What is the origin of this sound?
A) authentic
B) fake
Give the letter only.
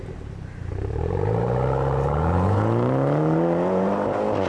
B